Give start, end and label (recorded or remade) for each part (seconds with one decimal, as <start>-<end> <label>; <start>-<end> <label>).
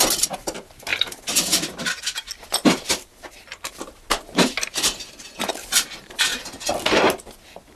0.0-7.8 recorded